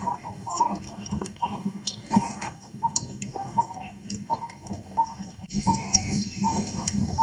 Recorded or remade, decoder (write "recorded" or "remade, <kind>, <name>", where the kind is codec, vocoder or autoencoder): remade, codec, DAC